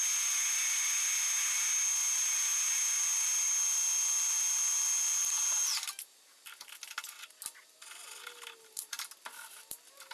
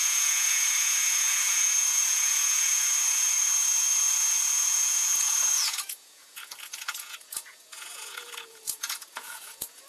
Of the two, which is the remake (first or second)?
second